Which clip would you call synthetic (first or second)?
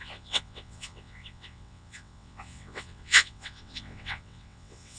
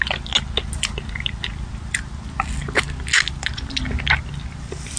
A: first